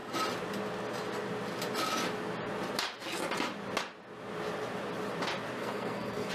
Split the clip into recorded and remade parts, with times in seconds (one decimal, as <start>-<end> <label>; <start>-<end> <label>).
0.0-5.6 recorded; 5.6-6.3 remade